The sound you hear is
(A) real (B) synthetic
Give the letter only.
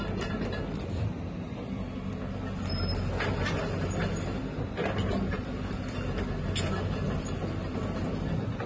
A